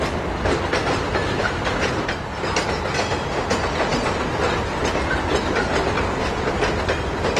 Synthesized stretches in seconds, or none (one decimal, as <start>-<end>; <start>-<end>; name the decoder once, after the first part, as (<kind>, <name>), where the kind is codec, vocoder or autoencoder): 1.4-2.2 (vocoder, BigVGAN v2)